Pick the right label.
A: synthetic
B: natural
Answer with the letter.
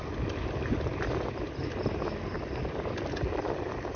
B